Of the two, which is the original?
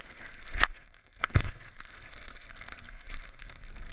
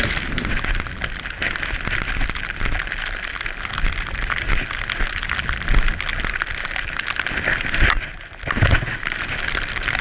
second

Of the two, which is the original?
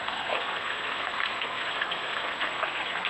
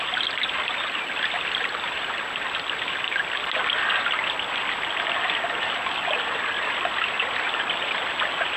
second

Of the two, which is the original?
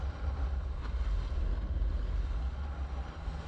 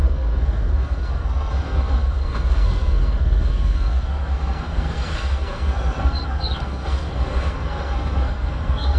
first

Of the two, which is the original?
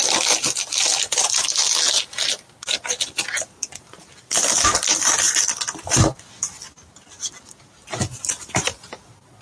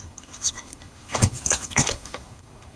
first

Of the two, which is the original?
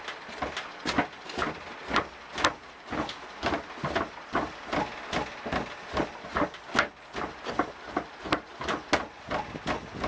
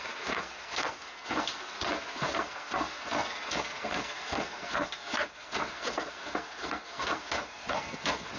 first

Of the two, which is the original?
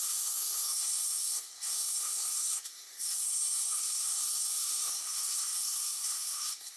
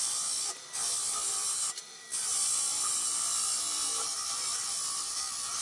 second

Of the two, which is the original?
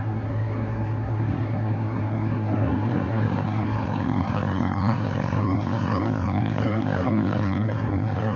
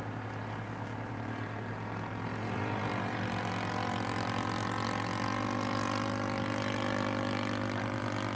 second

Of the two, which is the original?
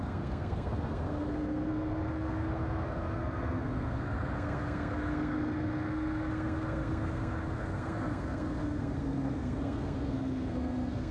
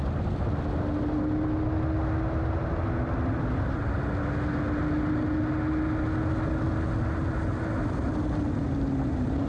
second